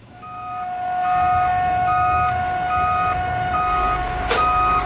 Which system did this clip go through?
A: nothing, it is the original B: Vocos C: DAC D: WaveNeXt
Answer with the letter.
C